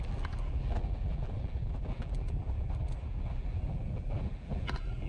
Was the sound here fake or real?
fake